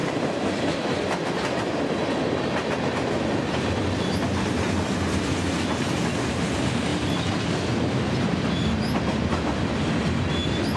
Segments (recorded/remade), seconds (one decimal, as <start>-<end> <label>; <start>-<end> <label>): 0.0-2.1 remade; 2.1-6.9 recorded; 6.9-9.0 remade; 9.0-10.8 recorded

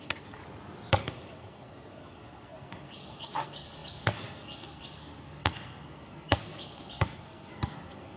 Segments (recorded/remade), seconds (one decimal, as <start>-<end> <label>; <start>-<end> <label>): 0.0-0.4 remade; 0.4-1.0 recorded; 1.0-8.2 remade

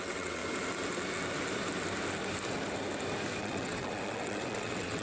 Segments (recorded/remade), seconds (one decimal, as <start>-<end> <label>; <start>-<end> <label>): 0.0-0.4 remade; 0.4-3.4 recorded; 3.4-5.0 remade

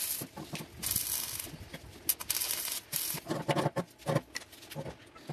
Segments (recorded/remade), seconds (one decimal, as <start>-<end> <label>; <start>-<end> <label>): 0.0-5.3 recorded

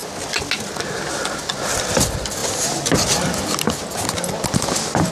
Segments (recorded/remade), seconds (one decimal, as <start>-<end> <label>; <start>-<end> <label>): 0.0-5.1 recorded